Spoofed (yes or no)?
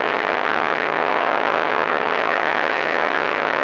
yes